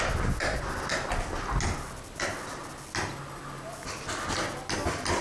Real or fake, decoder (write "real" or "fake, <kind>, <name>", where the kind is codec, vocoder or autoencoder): real